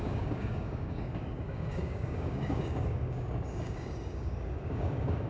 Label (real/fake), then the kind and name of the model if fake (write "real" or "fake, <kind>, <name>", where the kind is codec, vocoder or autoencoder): fake, codec, DAC